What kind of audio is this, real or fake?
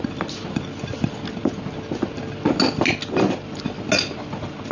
real